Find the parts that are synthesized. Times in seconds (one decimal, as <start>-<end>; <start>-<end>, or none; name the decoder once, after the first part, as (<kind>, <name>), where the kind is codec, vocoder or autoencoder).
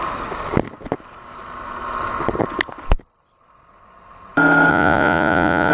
4.7-5.7 (vocoder, Vocos)